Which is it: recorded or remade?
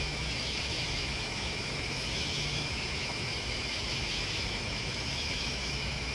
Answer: remade